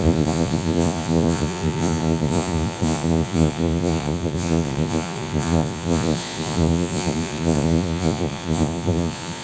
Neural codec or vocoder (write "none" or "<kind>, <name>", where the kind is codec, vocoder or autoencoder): vocoder, Vocos